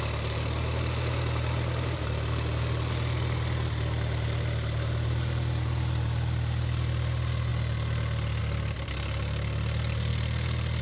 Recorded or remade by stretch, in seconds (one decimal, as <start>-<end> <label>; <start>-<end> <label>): 0.0-10.8 recorded